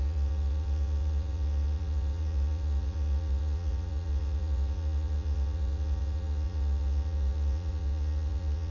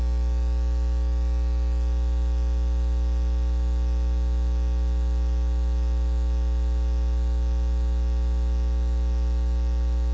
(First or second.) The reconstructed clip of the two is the first